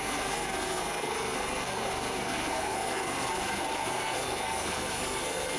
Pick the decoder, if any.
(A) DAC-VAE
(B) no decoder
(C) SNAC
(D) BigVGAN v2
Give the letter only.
C